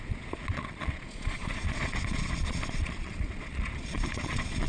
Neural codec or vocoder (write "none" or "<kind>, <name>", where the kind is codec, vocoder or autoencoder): vocoder, Vocos